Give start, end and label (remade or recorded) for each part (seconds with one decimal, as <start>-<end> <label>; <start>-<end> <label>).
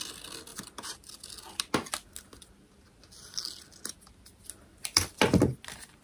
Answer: 0.0-6.0 recorded